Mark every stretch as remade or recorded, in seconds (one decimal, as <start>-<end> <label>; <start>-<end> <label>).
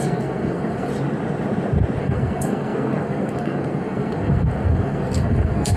0.0-0.9 remade; 0.9-2.0 recorded; 2.0-5.8 remade